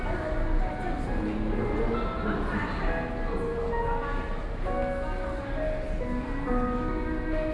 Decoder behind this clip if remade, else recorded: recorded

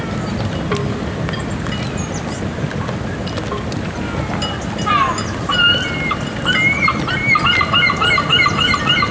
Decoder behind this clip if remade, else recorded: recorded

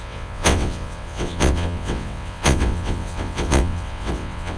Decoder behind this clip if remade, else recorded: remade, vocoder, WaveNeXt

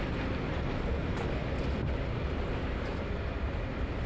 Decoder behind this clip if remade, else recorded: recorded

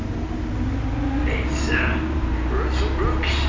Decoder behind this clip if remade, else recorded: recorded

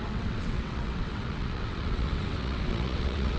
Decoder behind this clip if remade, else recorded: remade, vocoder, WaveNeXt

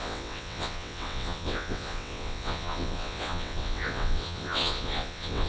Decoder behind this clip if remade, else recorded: remade, vocoder, WaveNeXt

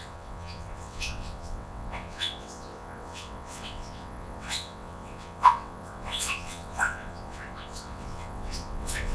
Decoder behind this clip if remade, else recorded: remade, vocoder, WaveNeXt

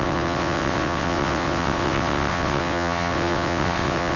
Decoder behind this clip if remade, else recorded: remade, vocoder, WaveNeXt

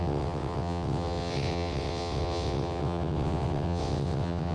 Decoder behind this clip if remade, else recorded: remade, vocoder, WaveNeXt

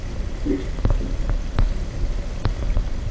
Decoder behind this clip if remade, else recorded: recorded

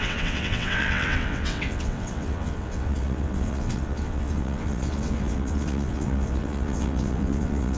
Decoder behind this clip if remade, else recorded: remade, vocoder, WaveNeXt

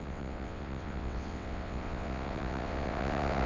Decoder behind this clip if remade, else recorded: remade, vocoder, WaveNeXt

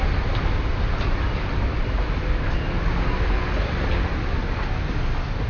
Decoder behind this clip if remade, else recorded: recorded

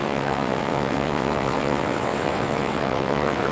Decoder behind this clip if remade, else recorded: remade, vocoder, WaveNeXt